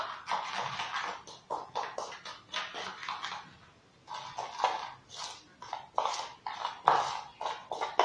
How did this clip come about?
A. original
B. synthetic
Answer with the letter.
A